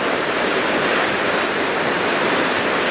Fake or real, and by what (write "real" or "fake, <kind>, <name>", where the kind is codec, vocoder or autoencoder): real